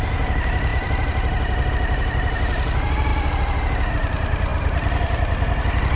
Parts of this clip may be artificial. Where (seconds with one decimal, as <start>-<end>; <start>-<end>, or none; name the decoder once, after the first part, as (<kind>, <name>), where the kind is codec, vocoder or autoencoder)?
0.0-3.1 (vocoder, BigVGAN v2); 3.9-6.0